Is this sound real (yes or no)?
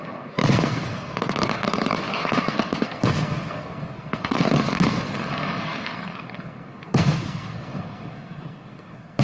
no